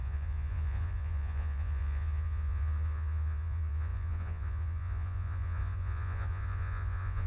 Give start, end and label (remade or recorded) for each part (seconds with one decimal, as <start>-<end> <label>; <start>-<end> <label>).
0.0-7.3 remade